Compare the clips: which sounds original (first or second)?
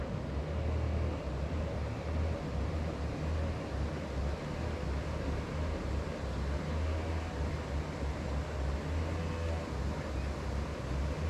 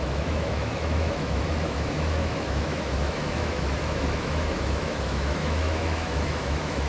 first